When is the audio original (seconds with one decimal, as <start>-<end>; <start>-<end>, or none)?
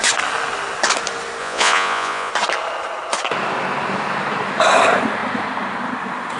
0.0-1.4; 2.3-6.4